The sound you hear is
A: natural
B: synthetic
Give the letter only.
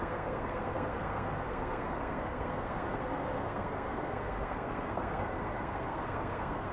B